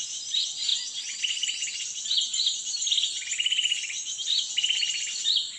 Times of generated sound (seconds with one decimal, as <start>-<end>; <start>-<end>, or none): none

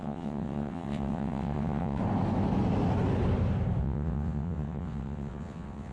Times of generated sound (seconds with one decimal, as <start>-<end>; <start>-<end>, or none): 0.0-2.0; 3.8-5.9

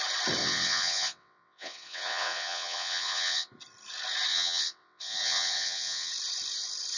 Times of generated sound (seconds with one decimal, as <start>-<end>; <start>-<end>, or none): 0.4-3.5; 4.3-6.1

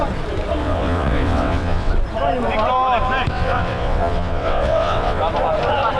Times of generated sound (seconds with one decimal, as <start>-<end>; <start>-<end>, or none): 0.6-1.9; 3.3-5.2

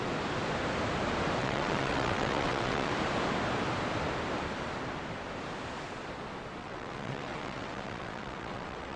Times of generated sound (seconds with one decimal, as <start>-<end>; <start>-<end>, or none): 1.4-2.9; 6.6-9.0

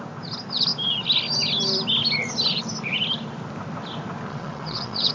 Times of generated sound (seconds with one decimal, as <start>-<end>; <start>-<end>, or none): 4.3-5.1

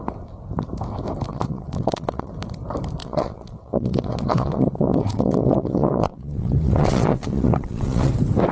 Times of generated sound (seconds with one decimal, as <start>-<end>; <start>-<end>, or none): 1.3-2.3; 3.0-8.1